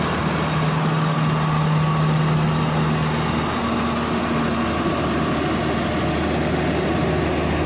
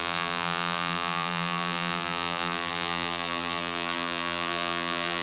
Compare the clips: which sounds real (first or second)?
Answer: first